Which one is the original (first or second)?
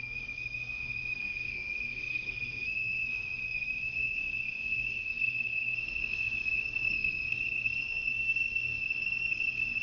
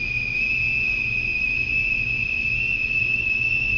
second